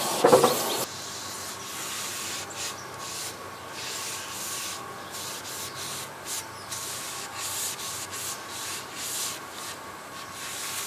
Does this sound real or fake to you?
real